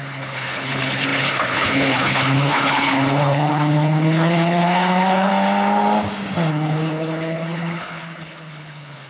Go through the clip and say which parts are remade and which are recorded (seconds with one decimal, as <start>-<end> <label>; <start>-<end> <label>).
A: 0.0-5.3 remade; 5.3-6.5 recorded; 6.5-9.1 remade

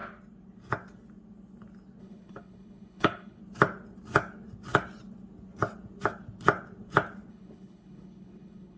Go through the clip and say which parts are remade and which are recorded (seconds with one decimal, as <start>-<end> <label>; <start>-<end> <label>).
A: 0.0-2.0 recorded; 2.0-3.4 remade; 3.4-7.3 recorded; 7.3-8.8 remade

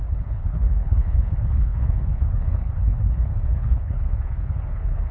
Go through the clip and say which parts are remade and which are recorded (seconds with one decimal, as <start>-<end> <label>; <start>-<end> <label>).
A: 0.0-5.1 remade

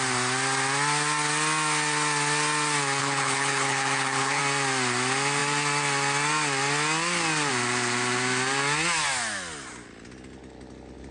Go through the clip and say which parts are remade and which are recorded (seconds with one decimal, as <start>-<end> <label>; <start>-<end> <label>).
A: 0.0-3.0 recorded; 3.0-4.4 remade; 4.4-11.1 recorded

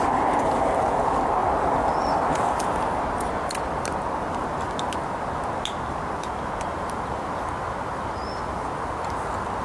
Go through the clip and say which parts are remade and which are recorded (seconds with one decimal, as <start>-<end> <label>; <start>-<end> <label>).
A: 0.0-9.6 recorded

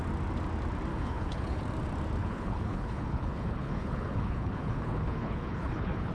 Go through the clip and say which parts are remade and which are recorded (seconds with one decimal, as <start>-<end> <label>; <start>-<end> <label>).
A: 0.0-0.9 recorded; 0.9-1.6 remade; 1.6-2.2 recorded; 2.2-6.1 remade

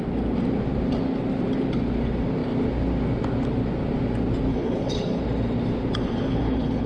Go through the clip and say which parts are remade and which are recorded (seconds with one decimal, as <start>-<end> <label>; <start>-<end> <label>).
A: 0.0-4.5 recorded; 4.5-5.2 remade; 5.2-6.0 recorded; 6.0-6.9 remade